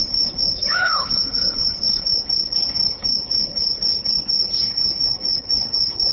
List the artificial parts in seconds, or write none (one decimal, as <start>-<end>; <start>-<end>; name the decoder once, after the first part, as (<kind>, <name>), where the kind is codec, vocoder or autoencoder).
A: 0.0-6.1 (codec, HILCodec)